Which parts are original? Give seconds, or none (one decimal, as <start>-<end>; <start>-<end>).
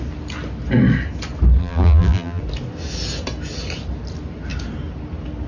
0.0-1.6; 2.4-5.5